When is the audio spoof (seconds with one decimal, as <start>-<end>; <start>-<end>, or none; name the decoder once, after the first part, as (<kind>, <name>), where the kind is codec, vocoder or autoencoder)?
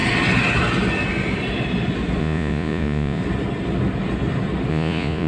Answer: 2.2-3.2 (vocoder, Vocos); 4.7-5.3